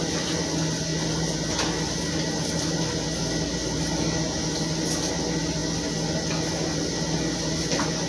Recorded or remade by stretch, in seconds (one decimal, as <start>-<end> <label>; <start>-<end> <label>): 0.0-8.1 recorded